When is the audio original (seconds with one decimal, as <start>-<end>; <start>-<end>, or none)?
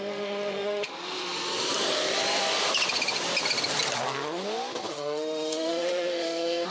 0.9-4.9